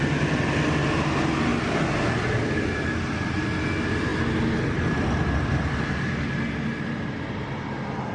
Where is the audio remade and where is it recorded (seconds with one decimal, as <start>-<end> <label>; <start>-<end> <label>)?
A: 0.0-8.1 recorded